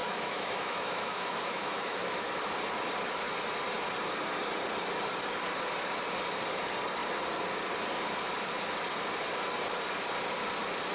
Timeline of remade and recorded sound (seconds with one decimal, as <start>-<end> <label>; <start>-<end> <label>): 0.0-2.3 remade; 2.3-10.9 recorded